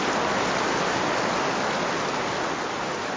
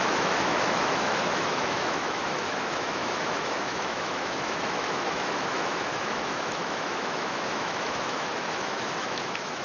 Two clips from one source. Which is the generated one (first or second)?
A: second